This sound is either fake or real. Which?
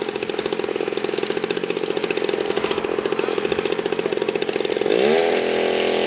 real